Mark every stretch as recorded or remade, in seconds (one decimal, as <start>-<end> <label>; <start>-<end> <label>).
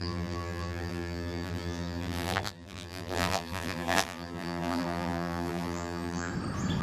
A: 0.0-6.3 remade; 6.3-6.8 recorded